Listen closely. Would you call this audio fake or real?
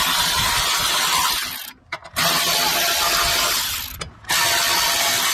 real